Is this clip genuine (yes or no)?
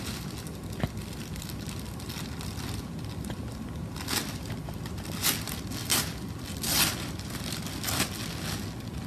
yes